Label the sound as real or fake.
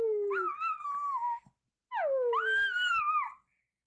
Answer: real